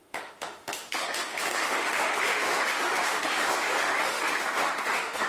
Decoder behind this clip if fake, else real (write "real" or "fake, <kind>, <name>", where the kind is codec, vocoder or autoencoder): fake, autoencoder, DAC-VAE